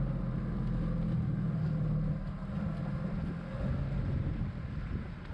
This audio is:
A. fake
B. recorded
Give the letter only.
B